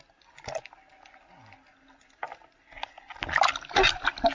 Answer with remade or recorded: recorded